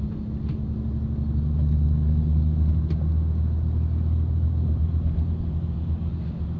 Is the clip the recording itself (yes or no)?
yes